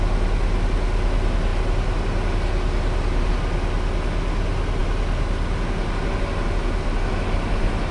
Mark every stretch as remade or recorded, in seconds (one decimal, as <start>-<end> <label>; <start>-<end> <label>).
0.0-7.9 recorded